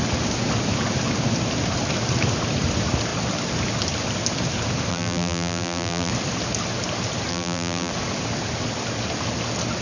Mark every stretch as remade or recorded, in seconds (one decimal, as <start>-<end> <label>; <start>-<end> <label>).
0.0-4.9 recorded; 4.9-6.1 remade; 6.1-7.3 recorded; 7.3-7.9 remade; 7.9-9.8 recorded